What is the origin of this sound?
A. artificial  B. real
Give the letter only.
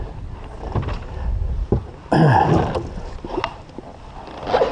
B